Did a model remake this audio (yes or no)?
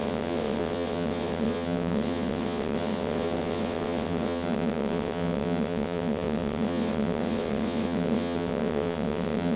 yes